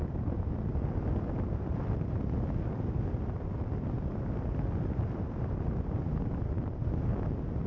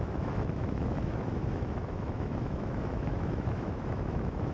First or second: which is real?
first